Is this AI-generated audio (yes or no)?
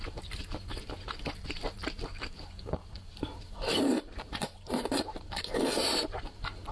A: yes